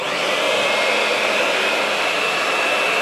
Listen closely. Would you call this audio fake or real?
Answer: fake